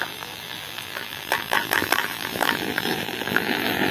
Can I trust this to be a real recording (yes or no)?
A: no